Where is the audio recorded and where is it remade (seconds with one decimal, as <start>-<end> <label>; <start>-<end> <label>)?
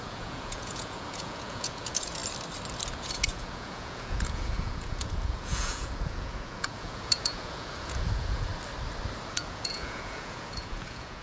0.0-2.2 remade; 2.2-2.9 recorded; 2.9-8.5 remade; 8.5-9.3 recorded; 9.3-11.2 remade